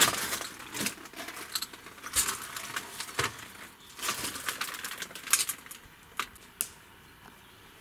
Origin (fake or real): real